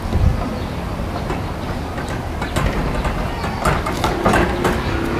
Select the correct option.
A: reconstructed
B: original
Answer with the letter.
B